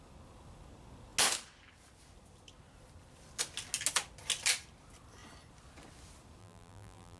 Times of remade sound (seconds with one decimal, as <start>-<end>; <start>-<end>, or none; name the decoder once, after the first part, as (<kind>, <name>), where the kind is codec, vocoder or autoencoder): 6.4-7.2 (vocoder, BigVGAN v2)